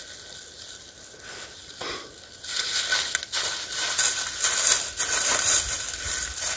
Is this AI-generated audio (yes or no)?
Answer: no